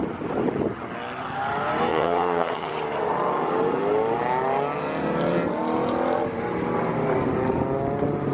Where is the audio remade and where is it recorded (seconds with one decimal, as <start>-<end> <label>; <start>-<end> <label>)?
0.0-1.9 recorded; 1.9-2.7 remade; 2.7-8.3 recorded